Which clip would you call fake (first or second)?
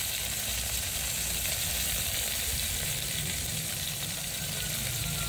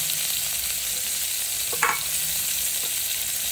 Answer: first